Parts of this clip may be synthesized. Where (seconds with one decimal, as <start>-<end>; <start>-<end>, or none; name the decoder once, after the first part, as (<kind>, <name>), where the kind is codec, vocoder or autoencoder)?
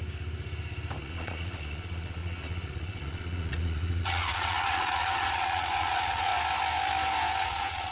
1.0-6.3 (vocoder, Vocos); 7.4-7.9